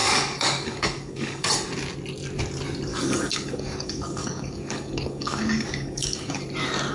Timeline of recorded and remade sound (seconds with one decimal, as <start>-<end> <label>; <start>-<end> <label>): 0.0-1.5 remade; 1.5-2.9 recorded; 2.9-6.4 remade; 6.4-6.9 recorded